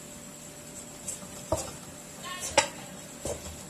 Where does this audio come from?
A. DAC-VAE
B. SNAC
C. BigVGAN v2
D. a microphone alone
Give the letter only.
D